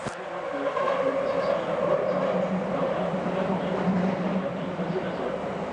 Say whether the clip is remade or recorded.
remade